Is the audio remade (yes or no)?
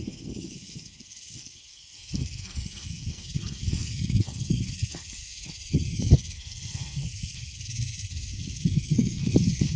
yes